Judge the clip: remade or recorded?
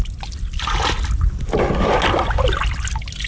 recorded